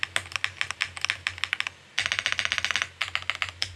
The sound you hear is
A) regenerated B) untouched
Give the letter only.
B